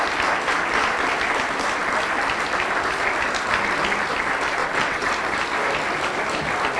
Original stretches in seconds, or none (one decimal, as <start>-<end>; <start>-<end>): 0.0-4.6; 5.1-6.8